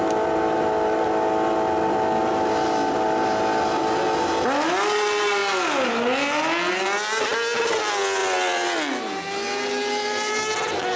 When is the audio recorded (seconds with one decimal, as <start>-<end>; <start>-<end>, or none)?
0.0-11.0